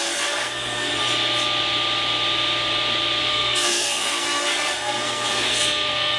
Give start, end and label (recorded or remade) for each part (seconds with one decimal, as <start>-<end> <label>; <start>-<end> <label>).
0.0-0.9 remade; 0.9-3.2 recorded; 3.2-6.2 remade